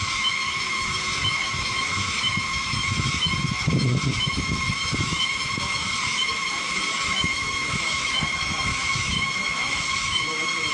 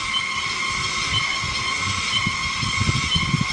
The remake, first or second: first